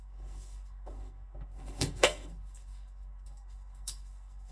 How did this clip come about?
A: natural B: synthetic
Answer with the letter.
B